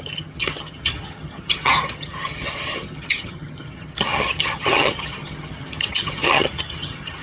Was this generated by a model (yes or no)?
yes